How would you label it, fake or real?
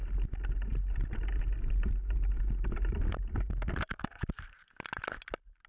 real